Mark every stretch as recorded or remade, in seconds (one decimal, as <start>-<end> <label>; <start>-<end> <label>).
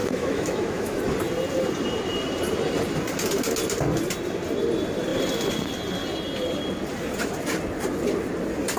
0.0-1.0 remade; 1.0-8.8 recorded